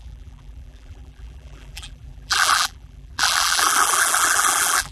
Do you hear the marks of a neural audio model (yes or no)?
yes